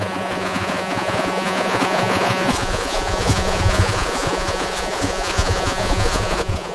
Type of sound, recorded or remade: remade